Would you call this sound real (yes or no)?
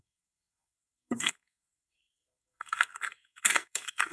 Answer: no